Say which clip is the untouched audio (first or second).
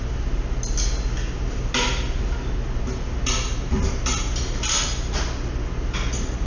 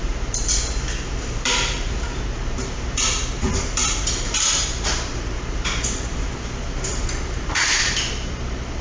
first